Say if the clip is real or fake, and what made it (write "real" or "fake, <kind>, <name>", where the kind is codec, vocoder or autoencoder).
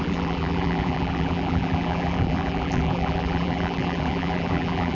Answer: fake, vocoder, BigVGAN v2